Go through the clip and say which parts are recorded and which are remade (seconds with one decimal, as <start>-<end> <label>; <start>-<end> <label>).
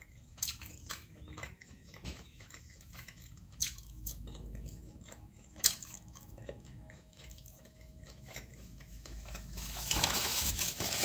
0.0-11.0 remade